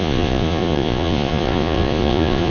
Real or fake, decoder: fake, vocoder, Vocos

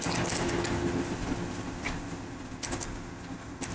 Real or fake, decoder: real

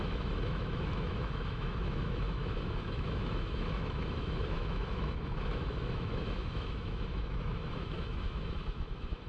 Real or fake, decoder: fake, autoencoder, DAC-VAE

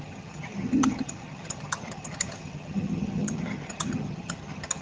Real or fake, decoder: fake, vocoder, HiFi-GAN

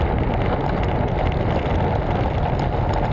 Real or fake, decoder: real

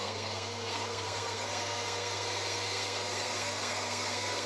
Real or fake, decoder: fake, codec, SNAC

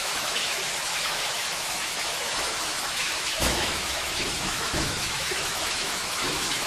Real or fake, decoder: fake, autoencoder, DAC-VAE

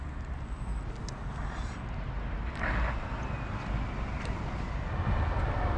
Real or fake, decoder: real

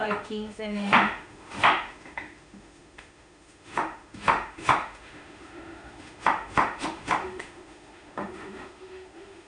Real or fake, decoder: fake, autoencoder, DAC-VAE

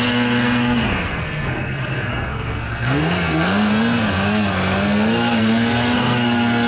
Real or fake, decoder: fake, codec, SNAC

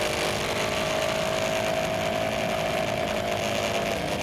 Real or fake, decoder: real